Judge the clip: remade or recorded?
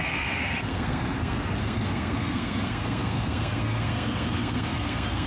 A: remade